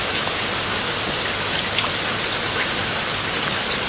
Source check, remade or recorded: recorded